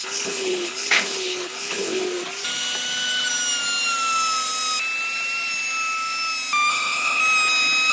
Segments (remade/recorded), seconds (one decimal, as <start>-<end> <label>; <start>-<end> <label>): 0.0-2.0 remade; 2.0-6.7 recorded; 6.7-7.2 remade; 7.2-7.9 recorded